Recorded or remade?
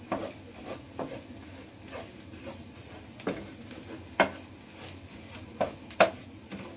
recorded